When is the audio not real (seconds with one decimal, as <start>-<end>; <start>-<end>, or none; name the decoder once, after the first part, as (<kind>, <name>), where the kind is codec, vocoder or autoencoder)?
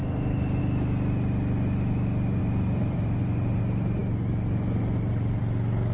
0.0-0.6 (vocoder, BigVGAN v2); 2.4-3.6